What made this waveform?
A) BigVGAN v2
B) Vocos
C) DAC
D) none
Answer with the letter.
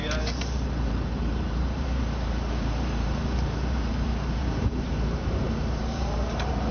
A